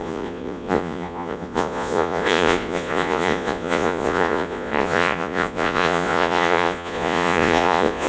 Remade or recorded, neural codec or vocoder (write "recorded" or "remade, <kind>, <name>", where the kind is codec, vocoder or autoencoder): remade, vocoder, Vocos